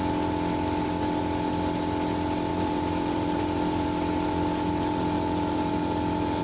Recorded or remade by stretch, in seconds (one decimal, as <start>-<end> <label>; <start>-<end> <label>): 0.0-2.5 recorded; 2.5-6.4 remade